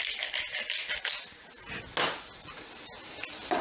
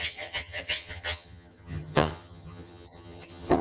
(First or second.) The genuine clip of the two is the first